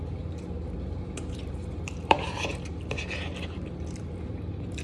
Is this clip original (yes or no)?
no